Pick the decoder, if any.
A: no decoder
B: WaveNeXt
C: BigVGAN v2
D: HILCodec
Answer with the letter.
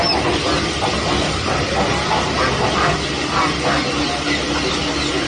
A